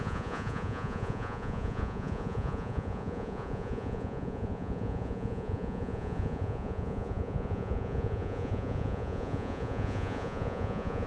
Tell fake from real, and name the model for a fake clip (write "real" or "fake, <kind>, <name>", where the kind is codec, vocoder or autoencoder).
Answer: fake, vocoder, Vocos